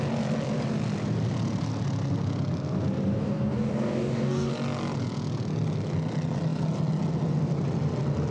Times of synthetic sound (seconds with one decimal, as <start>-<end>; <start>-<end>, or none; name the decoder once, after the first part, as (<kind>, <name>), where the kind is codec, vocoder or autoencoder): 3.2-4.5 (codec, DAC)